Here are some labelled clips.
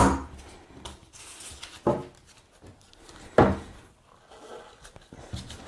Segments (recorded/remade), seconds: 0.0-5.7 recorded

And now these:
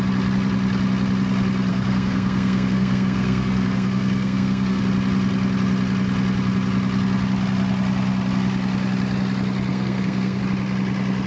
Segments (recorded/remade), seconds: 0.0-1.7 recorded; 1.7-4.8 remade; 4.8-9.7 recorded; 9.7-10.4 remade; 10.4-11.3 recorded

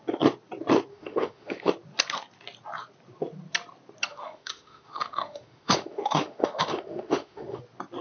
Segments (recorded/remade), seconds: 0.0-0.9 recorded; 0.9-1.7 remade; 1.7-4.1 recorded; 4.1-7.6 remade; 7.6-8.0 recorded

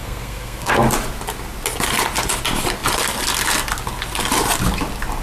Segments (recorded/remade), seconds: 0.0-0.7 remade; 0.7-5.2 recorded

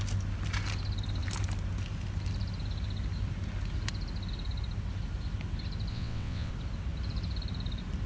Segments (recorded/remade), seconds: 0.0-5.9 recorded; 5.9-6.5 remade; 6.5-8.1 recorded

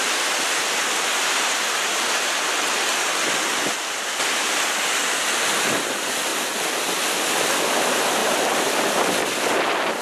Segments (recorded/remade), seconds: 0.0-8.2 recorded; 8.2-9.0 remade; 9.0-10.0 recorded